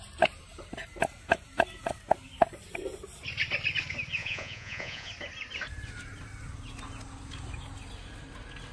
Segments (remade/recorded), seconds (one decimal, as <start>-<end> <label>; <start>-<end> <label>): 0.0-4.2 recorded; 4.2-5.1 remade; 5.1-8.7 recorded